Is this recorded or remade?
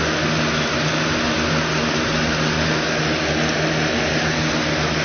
recorded